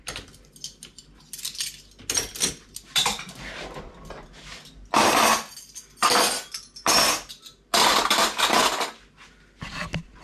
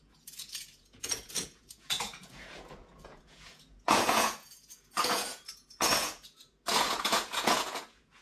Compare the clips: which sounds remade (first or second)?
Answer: second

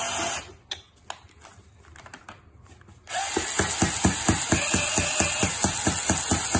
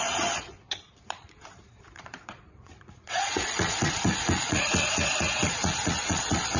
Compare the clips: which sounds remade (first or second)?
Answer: second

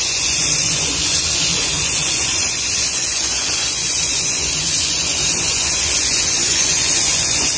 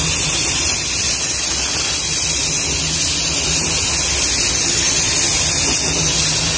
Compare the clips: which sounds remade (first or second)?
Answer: first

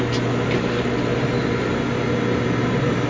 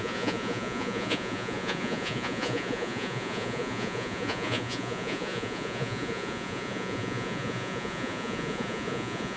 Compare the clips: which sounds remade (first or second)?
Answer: second